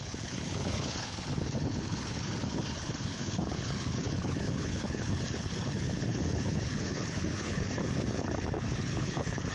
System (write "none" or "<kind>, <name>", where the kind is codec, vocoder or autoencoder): codec, HILCodec